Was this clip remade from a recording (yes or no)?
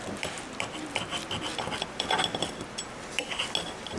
no